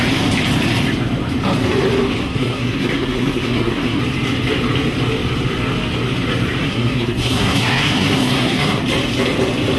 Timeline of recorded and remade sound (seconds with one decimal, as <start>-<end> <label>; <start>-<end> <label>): 0.0-2.2 recorded; 2.2-4.0 remade; 4.0-6.6 recorded; 6.6-8.8 remade; 8.8-9.8 recorded